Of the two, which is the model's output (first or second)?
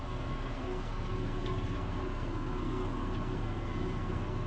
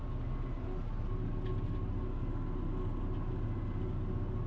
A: first